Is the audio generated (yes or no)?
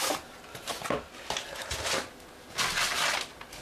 no